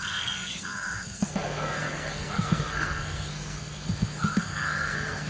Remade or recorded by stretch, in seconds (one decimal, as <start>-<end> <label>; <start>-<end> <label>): 0.0-5.3 remade